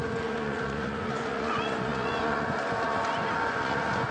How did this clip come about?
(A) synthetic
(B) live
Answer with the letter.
A